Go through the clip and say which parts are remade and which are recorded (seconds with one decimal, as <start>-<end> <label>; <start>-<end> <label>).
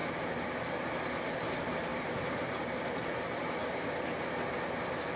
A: 0.0-0.6 remade; 0.6-1.9 recorded; 1.9-3.0 remade; 3.0-5.2 recorded